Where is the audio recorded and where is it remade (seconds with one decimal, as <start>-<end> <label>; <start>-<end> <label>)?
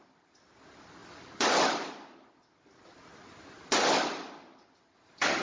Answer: 0.0-5.4 recorded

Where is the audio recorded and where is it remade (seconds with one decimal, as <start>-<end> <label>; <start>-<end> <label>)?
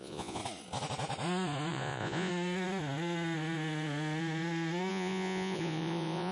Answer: 0.0-0.4 remade; 0.4-1.7 recorded; 1.7-2.3 remade; 2.3-4.9 recorded; 4.9-6.3 remade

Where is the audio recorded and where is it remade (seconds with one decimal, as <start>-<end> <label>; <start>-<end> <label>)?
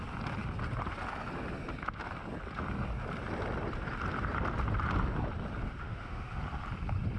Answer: 0.0-5.8 recorded; 5.8-6.4 remade; 6.4-7.2 recorded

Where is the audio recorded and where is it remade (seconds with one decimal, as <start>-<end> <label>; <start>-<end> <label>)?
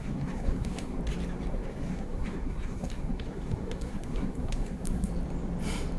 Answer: 0.0-1.0 remade; 1.0-1.5 recorded; 1.5-5.1 remade; 5.1-6.0 recorded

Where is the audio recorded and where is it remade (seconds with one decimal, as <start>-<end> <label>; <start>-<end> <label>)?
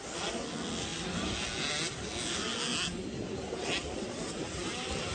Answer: 0.0-5.1 recorded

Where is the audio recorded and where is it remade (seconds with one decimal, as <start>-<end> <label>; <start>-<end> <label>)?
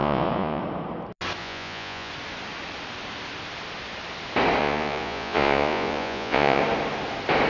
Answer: 0.0-0.6 remade; 0.6-1.4 recorded; 1.4-2.1 remade; 2.1-4.6 recorded; 4.6-6.6 remade; 6.6-7.5 recorded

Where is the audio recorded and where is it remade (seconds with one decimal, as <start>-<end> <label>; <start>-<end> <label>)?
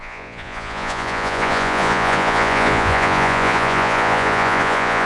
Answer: 0.0-5.1 remade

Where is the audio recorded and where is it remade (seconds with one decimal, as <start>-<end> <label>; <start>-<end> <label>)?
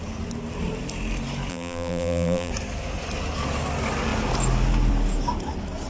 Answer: 0.0-1.5 recorded; 1.5-2.5 remade; 2.5-5.9 recorded